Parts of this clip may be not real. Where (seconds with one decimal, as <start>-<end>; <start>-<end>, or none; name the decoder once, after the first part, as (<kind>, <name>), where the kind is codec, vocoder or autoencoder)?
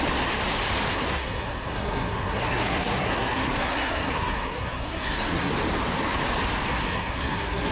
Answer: 0.9-5.5 (codec, SNAC); 6.7-7.7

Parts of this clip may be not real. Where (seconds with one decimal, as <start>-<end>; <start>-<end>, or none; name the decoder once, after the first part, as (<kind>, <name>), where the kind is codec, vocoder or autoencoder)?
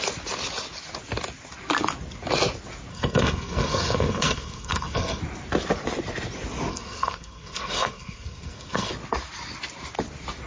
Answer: 2.9-5.2 (codec, SNAC); 6.7-8.9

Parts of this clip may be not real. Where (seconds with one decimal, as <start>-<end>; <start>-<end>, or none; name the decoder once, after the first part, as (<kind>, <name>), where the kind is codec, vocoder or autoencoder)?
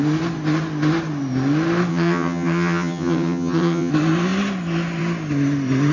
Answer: 1.9-3.9 (vocoder, HiFi-GAN)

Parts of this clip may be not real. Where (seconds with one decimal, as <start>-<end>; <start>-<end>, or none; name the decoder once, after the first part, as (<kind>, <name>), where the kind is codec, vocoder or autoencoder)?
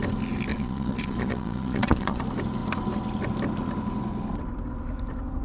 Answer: 0.5-2.2 (vocoder, Vocos)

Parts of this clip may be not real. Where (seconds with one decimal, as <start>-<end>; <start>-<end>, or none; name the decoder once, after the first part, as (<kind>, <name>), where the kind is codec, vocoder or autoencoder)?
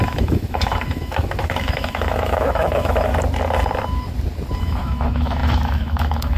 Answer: 0.0-3.1 (autoencoder, DAC-VAE); 4.6-6.4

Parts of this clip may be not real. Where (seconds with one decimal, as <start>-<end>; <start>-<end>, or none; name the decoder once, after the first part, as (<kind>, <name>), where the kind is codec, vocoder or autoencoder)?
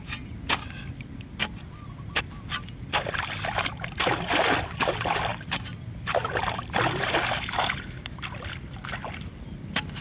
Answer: 5.3-8.5 (vocoder, BigVGAN v2)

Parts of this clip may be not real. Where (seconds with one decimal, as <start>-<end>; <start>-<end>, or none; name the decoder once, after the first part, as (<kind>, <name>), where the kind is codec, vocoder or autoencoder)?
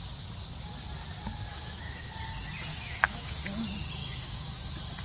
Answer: 1.5-2.1 (autoencoder, DAC-VAE); 2.7-3.3; 4.0-4.6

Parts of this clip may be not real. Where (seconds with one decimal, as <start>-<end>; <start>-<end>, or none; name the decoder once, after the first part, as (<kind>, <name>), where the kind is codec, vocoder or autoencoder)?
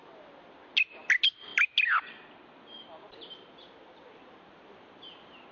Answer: none